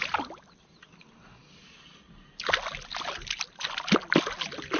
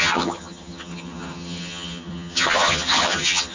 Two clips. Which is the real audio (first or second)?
first